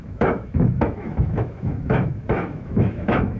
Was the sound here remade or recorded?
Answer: remade